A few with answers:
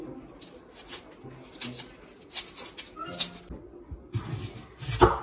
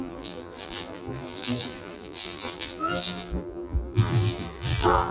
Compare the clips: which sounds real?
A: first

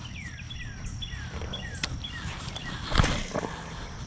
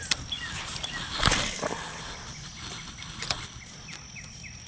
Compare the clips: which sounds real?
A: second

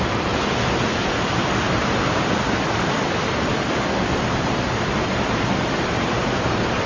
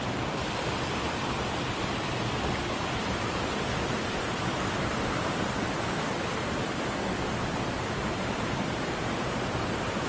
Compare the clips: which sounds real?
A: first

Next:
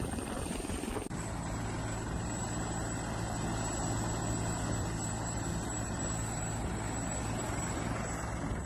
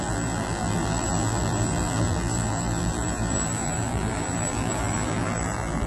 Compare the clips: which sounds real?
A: first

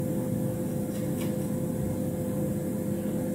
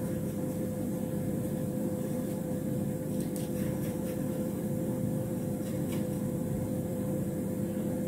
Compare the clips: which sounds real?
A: first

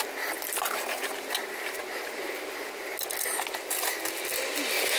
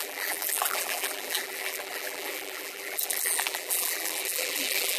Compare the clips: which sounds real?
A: first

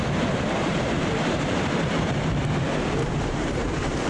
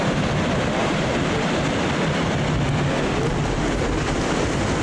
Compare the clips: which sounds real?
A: second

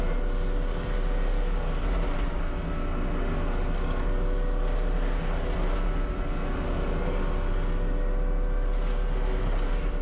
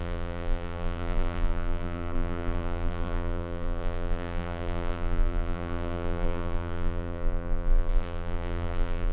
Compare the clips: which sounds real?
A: first